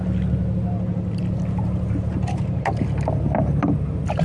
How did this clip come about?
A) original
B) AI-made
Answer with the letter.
A